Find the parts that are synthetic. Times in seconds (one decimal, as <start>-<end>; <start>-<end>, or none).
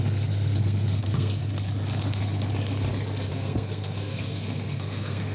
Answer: 0.0-1.4; 3.3-5.3